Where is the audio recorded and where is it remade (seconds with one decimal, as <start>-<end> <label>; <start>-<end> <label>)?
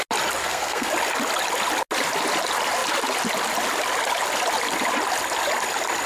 0.0-0.4 recorded; 0.4-0.9 remade; 0.9-6.1 recorded